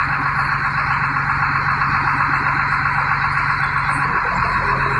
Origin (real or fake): real